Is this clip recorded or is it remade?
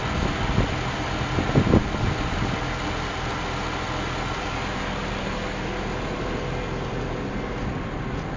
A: recorded